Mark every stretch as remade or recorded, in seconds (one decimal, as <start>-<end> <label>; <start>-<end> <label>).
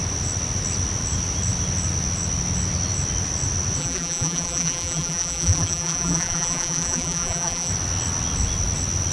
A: 0.0-3.8 recorded; 3.8-7.7 remade; 7.7-9.1 recorded